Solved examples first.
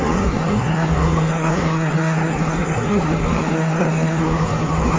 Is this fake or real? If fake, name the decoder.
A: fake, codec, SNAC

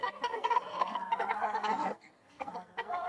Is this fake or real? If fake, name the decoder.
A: fake, codec, SNAC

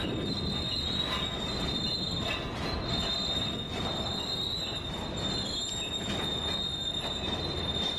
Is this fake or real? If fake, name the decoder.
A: real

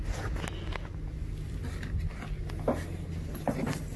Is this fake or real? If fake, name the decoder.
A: real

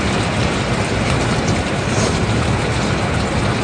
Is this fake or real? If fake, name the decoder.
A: real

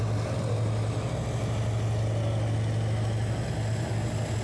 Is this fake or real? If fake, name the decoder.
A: real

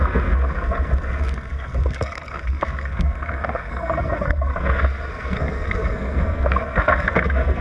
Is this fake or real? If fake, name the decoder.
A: fake, codec, SNAC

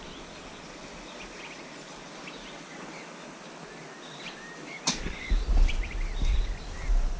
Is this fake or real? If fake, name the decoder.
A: real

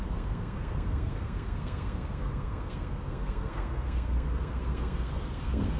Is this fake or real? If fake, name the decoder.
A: fake, codec, SNAC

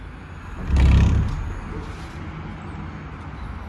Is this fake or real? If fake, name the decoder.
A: real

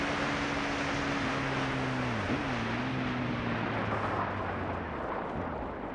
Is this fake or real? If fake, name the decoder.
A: real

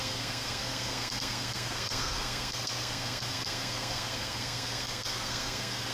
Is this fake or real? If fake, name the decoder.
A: fake, codec, SNAC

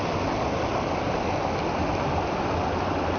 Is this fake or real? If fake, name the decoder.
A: real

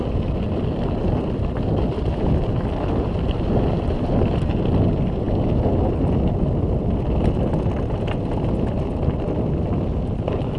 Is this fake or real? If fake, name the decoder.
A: real